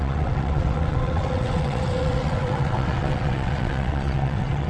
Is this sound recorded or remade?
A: remade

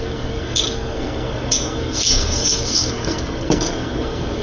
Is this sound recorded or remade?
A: remade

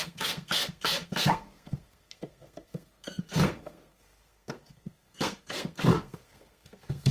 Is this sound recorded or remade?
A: remade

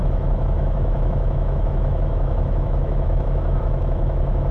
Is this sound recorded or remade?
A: remade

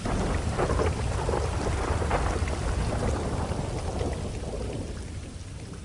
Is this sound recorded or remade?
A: recorded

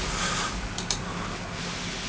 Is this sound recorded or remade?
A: recorded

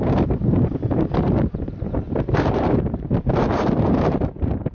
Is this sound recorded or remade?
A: remade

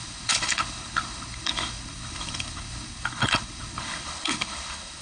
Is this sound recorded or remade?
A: remade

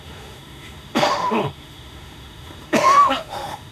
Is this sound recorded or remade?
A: remade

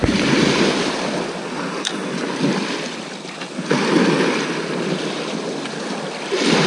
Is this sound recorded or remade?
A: recorded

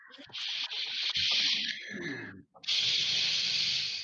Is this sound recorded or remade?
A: recorded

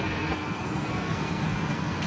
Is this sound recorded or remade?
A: remade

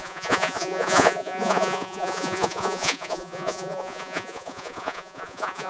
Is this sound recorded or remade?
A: remade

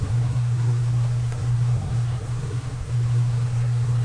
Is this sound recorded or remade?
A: remade